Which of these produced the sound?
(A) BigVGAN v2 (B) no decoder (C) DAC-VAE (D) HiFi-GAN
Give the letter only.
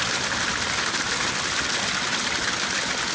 B